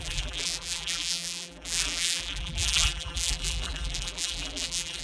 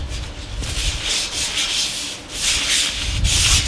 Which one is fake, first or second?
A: first